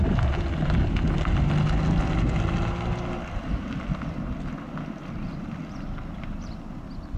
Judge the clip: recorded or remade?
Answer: recorded